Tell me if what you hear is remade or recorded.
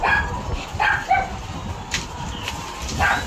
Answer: recorded